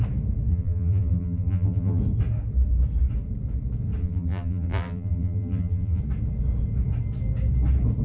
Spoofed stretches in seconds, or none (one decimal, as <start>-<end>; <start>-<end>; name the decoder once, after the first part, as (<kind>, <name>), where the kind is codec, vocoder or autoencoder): 0.5-2.0 (vocoder, BigVGAN v2); 4.0-6.0